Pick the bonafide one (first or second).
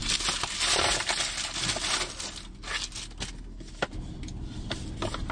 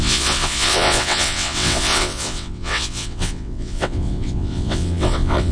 first